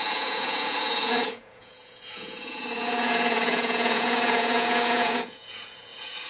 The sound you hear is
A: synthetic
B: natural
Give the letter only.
A